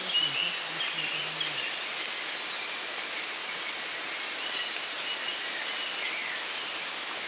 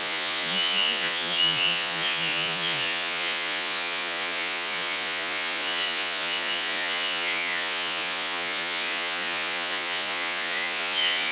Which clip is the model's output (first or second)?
second